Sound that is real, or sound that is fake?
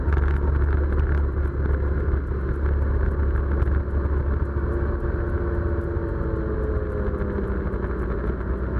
real